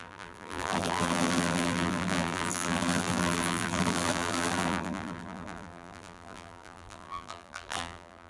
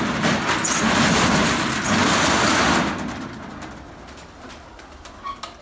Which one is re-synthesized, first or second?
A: first